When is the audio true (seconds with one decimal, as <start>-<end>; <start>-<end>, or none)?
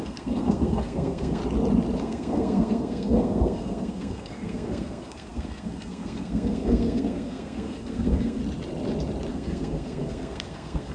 1.4-2.0; 8.4-9.3